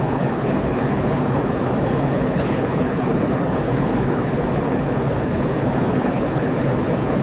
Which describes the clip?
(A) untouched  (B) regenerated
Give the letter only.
B